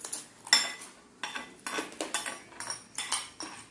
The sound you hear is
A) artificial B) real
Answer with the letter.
B